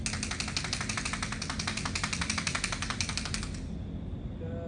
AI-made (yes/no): no